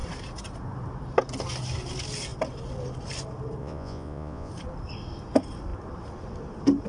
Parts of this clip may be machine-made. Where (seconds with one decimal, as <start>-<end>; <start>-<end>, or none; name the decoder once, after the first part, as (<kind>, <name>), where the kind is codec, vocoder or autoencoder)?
3.6-4.5 (vocoder, Vocos)